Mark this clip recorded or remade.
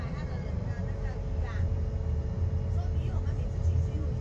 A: recorded